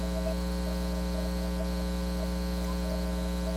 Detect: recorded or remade recorded